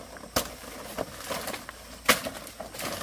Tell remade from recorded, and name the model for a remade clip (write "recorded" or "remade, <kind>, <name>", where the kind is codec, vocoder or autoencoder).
recorded